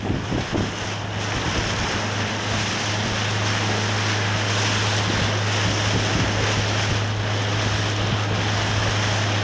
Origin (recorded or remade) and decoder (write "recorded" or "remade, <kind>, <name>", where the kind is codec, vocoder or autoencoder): recorded